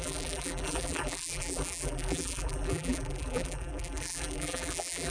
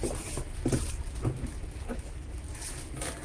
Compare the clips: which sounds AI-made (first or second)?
first